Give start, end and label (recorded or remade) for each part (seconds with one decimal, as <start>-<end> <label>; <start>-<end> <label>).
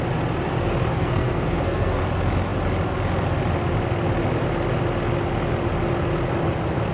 0.0-0.9 recorded; 0.9-2.0 remade; 2.0-6.9 recorded